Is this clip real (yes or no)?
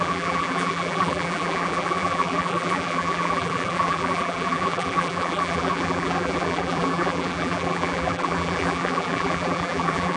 no